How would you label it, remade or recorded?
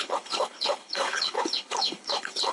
remade